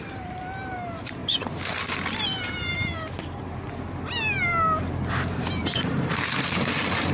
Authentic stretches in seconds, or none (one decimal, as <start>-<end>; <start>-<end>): 1.2-5.1